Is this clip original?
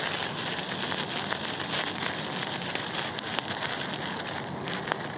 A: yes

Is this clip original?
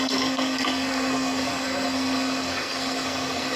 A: no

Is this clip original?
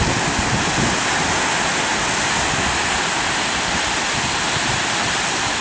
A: yes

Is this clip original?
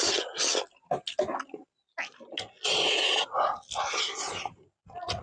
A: yes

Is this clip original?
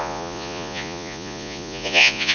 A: no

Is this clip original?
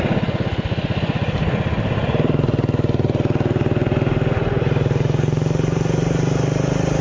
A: yes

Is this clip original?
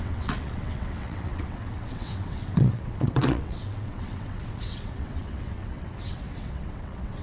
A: no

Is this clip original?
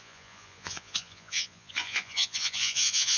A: no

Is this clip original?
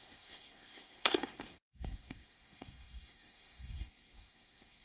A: no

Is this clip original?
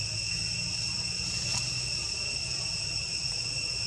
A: yes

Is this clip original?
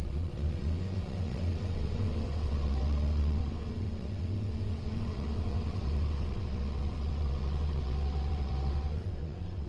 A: no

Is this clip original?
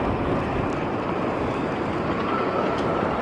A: yes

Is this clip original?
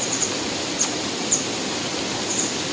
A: yes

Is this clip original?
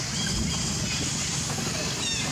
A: yes